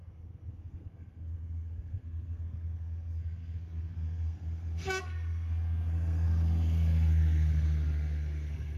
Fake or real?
fake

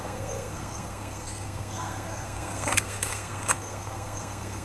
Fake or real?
fake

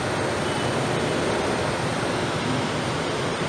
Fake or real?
real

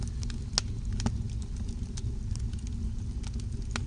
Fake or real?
real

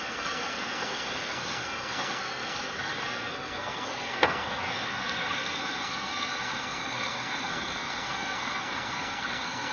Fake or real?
fake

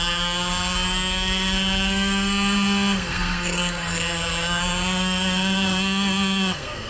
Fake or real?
fake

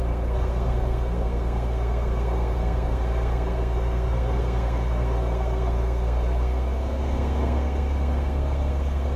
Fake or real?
fake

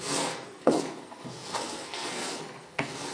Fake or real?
fake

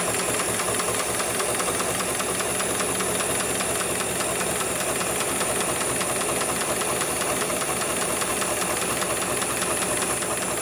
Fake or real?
real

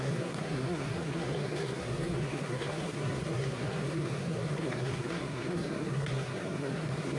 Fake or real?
fake